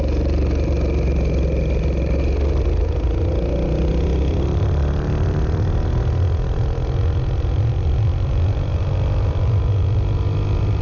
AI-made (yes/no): no